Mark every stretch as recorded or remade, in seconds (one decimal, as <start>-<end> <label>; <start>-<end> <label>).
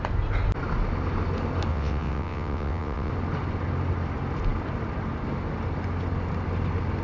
0.0-1.7 recorded; 1.7-3.1 remade; 3.1-7.0 recorded